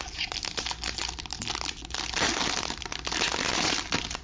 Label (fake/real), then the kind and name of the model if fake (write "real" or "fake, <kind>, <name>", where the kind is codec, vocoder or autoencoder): real